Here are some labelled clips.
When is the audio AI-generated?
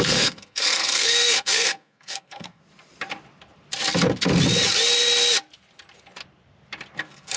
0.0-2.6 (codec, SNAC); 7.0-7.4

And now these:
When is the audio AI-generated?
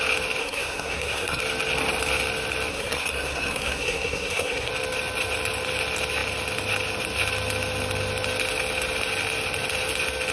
0.4-1.4 (codec, SNAC); 2.7-4.7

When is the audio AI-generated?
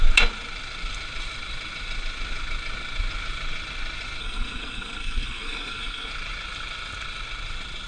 4.2-6.1 (codec, SNAC)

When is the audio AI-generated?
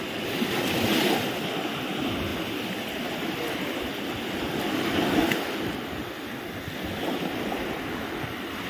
none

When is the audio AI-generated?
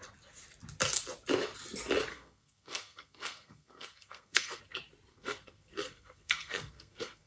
2.1-4.6 (codec, SNAC); 5.1-7.3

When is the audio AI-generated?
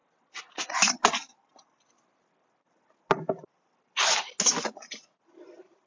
none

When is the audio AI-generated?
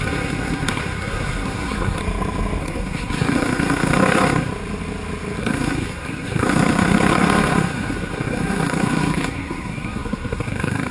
0.0-2.0 (codec, SNAC); 2.6-4.5; 5.4-10.9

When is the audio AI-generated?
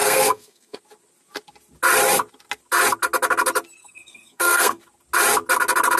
0.0-0.8 (codec, SNAC); 3.8-4.8